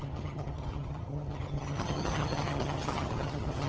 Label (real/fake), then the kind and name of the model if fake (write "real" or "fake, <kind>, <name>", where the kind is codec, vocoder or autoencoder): fake, vocoder, HiFi-GAN